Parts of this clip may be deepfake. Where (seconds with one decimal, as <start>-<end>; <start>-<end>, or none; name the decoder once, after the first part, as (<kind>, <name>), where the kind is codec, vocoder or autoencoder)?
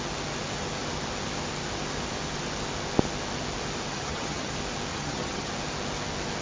3.9-4.5 (vocoder, HiFi-GAN); 4.9-5.5